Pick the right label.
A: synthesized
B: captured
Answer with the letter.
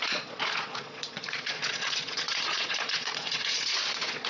A